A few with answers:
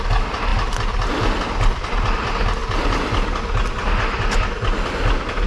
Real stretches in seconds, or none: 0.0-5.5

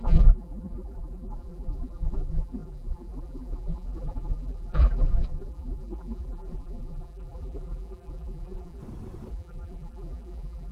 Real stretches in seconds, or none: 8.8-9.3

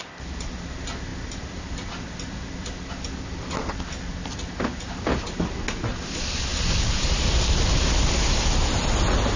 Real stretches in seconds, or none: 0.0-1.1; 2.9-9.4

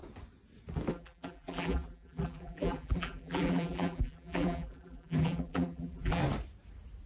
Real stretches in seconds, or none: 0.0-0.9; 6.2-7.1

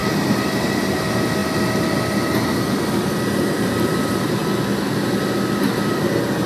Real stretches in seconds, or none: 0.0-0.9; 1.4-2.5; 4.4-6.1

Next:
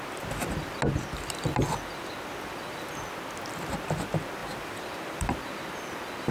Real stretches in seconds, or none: 0.0-1.6; 2.7-4.4